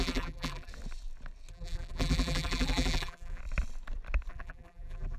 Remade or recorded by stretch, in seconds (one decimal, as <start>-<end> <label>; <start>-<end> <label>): 0.0-0.7 remade; 0.7-1.5 recorded; 1.5-3.4 remade; 3.4-4.3 recorded; 4.3-5.2 remade